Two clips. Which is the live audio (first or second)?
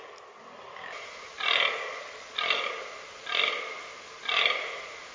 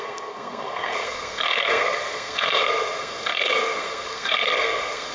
first